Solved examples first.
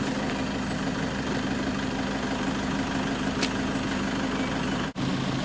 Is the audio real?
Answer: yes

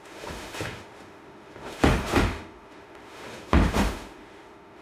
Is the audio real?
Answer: no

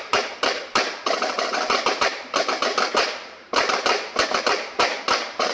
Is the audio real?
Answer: no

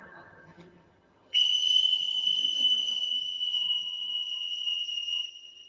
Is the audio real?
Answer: no